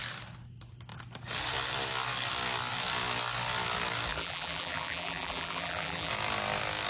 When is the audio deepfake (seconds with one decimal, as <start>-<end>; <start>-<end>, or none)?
4.1-6.1